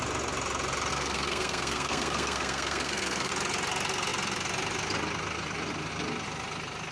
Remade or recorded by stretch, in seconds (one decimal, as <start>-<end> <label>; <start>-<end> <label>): 0.0-0.9 recorded; 0.9-3.3 remade; 3.3-6.9 recorded